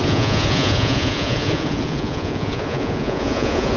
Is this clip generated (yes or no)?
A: yes